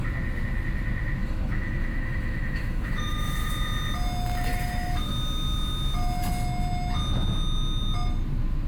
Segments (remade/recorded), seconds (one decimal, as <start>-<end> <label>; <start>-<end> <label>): 0.0-1.2 recorded; 1.2-3.5 remade; 3.5-4.5 recorded; 4.5-5.1 remade; 5.1-8.7 recorded